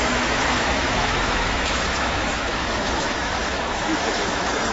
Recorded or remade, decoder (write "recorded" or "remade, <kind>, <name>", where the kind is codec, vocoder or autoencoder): remade, autoencoder, DAC-VAE